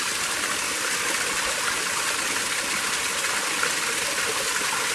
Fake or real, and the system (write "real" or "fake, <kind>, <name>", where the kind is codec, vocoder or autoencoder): real